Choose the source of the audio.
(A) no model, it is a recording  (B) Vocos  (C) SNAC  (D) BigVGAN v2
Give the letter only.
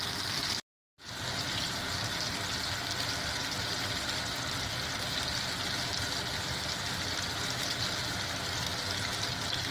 A